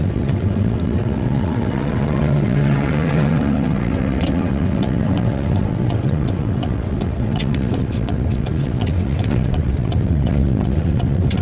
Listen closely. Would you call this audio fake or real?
fake